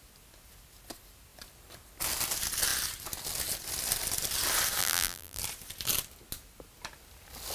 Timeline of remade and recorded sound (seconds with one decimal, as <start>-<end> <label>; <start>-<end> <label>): 0.0-4.8 recorded; 4.8-5.4 remade; 5.4-7.5 recorded